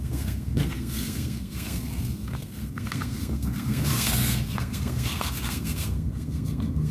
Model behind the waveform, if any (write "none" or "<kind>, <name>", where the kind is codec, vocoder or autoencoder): codec, SNAC